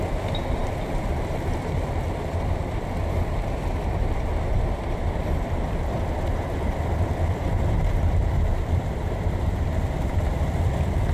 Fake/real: fake